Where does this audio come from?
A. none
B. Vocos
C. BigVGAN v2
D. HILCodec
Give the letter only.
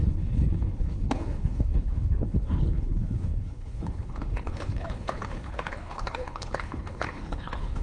D